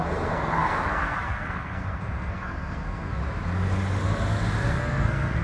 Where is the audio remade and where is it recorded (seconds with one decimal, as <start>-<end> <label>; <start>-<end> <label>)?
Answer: 0.0-3.2 remade; 3.2-4.7 recorded; 4.7-5.4 remade

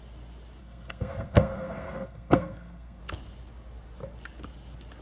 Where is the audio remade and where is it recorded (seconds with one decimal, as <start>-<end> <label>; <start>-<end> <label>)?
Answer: 0.0-0.6 recorded; 0.6-3.0 remade; 3.0-5.0 recorded

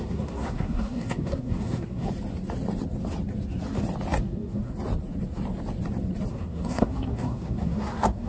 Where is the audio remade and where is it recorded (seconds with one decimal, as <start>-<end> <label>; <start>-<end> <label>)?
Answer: 0.0-2.1 remade; 2.1-4.2 recorded; 4.2-4.7 remade; 4.7-6.3 recorded; 6.3-8.3 remade

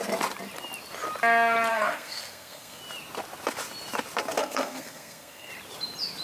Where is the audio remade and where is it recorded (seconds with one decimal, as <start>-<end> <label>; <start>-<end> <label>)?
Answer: 0.0-1.7 recorded; 1.7-2.8 remade; 2.8-4.4 recorded; 4.4-5.5 remade; 5.5-6.2 recorded

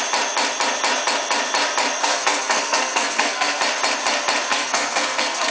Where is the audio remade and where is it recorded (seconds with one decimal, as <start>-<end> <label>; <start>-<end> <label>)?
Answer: 0.0-2.0 recorded; 2.0-3.6 remade; 3.6-4.5 recorded; 4.5-5.5 remade

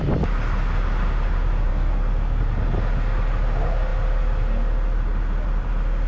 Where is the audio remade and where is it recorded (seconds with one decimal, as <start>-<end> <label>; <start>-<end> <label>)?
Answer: 0.0-1.7 recorded; 1.7-2.4 remade; 2.4-6.1 recorded

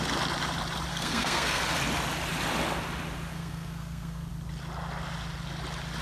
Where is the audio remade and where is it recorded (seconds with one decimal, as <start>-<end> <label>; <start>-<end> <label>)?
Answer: 0.0-0.9 recorded; 0.9-1.6 remade; 1.6-3.3 recorded; 3.3-4.3 remade; 4.3-6.0 recorded